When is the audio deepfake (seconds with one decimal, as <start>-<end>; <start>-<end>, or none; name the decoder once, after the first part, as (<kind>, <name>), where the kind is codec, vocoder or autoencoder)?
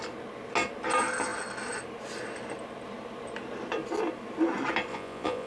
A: 4.9-5.5 (vocoder, Vocos)